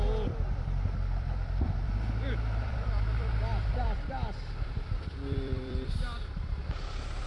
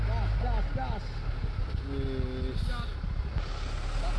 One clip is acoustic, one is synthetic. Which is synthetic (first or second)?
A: first